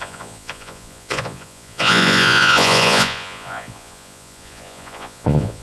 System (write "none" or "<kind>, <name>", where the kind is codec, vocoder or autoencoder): vocoder, Vocos